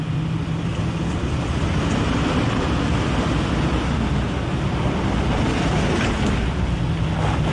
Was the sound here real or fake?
real